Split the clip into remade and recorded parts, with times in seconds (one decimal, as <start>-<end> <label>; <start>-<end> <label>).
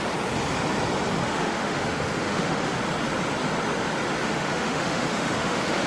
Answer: 0.0-1.2 recorded; 1.2-2.8 remade; 2.8-4.2 recorded; 4.2-5.9 remade